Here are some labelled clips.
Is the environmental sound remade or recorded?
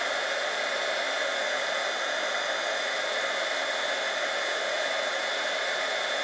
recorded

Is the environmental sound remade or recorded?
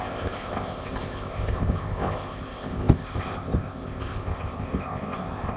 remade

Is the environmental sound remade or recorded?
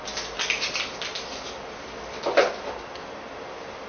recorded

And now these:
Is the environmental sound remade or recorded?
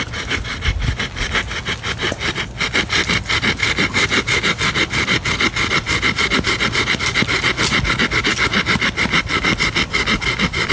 recorded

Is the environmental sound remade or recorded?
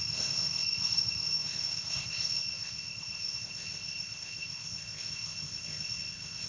remade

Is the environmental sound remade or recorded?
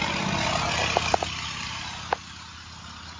recorded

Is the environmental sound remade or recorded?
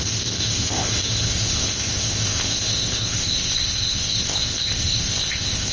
remade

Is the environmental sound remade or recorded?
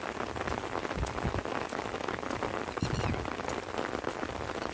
recorded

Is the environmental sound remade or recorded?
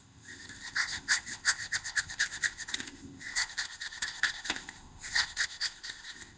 remade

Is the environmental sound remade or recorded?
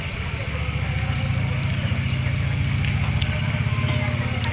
recorded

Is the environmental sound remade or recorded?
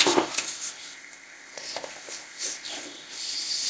remade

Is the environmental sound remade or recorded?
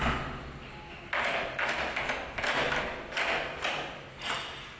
recorded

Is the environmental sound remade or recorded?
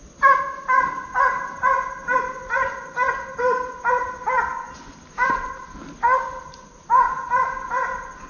recorded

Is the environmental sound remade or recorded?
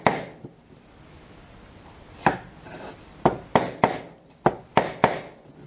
recorded